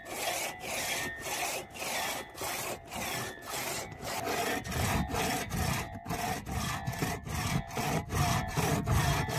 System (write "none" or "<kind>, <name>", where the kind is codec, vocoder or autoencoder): none